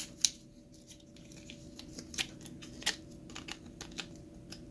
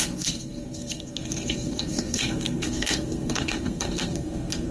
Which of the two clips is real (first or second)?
first